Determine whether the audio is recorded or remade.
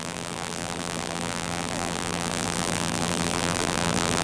remade